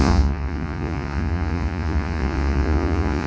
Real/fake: fake